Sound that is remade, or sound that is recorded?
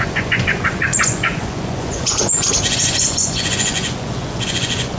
remade